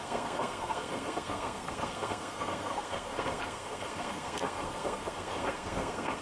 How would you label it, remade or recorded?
remade